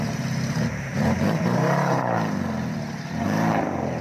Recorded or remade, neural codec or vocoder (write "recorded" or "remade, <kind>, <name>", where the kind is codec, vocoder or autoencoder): remade, vocoder, BigVGAN v2